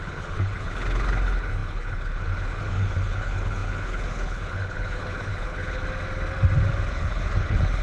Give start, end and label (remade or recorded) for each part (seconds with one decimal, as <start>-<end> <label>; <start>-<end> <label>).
0.0-5.8 remade; 5.8-6.9 recorded; 6.9-7.8 remade